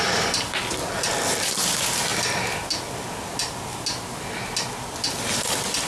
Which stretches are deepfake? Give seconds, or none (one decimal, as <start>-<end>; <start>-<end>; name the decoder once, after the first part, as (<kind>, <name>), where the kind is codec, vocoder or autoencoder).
none